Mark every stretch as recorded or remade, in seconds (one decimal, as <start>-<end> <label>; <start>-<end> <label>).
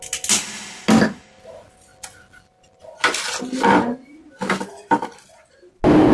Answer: 0.0-6.1 recorded